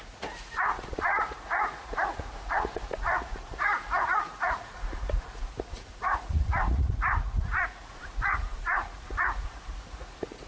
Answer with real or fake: fake